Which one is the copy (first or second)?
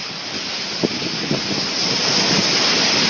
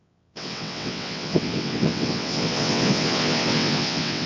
second